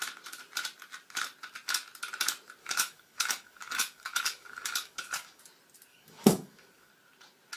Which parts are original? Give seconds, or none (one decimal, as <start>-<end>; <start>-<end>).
0.0-2.6; 5.4-5.9; 6.9-7.6